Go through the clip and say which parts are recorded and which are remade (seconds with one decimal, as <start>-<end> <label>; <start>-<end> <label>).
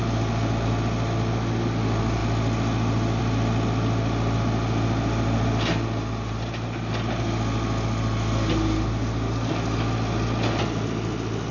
0.0-11.5 recorded